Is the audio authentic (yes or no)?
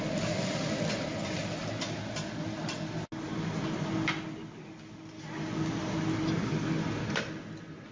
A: yes